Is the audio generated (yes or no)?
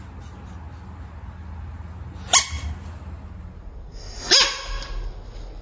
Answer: no